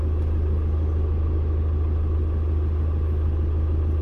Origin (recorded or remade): recorded